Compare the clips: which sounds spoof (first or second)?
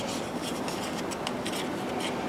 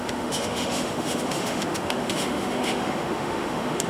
second